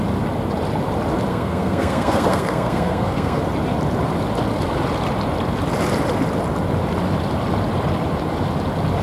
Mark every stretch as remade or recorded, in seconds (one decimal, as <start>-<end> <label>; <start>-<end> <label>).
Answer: 0.0-1.3 recorded; 1.3-3.4 remade; 3.4-9.0 recorded